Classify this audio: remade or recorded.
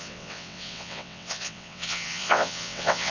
remade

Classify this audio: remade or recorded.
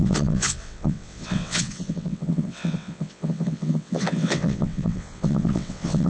remade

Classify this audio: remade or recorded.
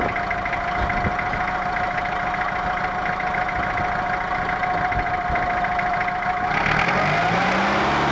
recorded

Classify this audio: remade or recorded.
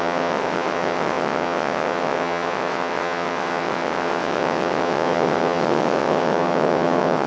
remade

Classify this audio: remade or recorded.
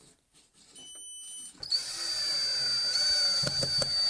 recorded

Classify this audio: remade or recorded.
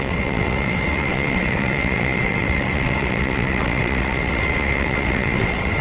remade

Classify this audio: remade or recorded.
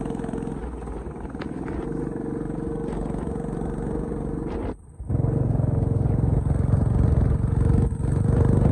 recorded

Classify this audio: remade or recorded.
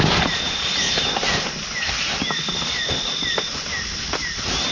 recorded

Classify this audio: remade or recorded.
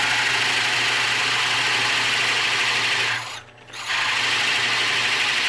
recorded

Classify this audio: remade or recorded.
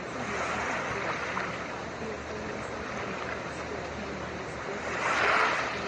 recorded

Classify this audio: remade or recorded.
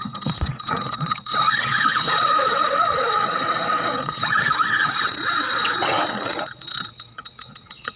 remade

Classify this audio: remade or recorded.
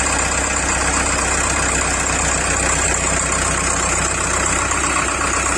recorded